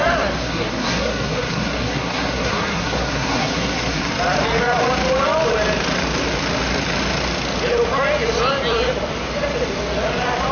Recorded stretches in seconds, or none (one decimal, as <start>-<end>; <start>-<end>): 0.0-0.4; 4.1-10.5